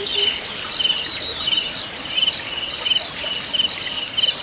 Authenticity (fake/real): real